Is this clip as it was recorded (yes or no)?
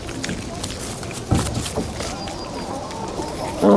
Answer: yes